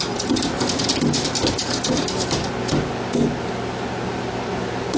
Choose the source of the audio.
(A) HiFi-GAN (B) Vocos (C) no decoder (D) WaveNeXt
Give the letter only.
C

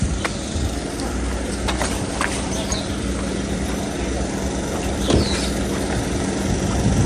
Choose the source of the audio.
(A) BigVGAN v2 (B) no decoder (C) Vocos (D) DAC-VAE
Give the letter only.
A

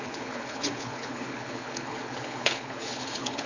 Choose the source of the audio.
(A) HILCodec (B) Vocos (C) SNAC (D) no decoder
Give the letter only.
A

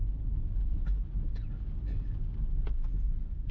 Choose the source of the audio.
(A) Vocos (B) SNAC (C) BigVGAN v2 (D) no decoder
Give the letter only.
D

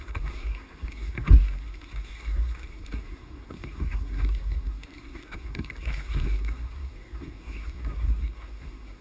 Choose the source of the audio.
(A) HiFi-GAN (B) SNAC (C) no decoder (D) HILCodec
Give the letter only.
B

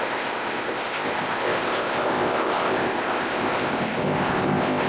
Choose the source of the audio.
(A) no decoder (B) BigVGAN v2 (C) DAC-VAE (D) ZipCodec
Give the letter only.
D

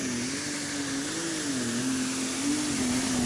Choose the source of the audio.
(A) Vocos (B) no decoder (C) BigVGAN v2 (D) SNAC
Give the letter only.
B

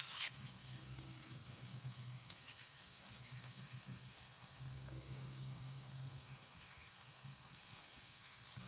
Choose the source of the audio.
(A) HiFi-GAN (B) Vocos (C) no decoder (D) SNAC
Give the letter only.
D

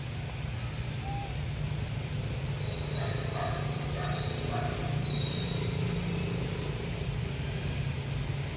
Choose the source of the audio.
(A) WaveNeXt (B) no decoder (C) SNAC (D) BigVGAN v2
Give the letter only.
B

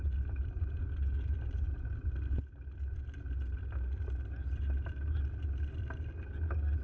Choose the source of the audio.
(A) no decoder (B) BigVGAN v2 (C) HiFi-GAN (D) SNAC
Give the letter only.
A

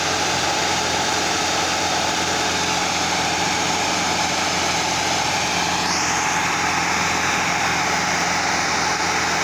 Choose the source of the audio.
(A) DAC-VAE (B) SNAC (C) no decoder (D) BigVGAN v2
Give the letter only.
D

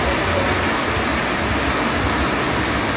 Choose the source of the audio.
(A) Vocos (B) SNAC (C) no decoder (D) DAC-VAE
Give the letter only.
C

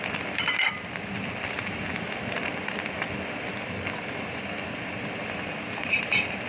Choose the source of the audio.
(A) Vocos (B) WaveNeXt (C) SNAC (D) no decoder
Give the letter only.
D